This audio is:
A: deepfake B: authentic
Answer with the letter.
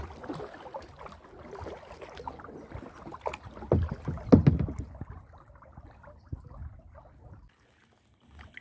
B